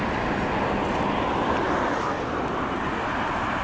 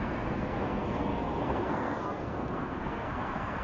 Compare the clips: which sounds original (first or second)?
first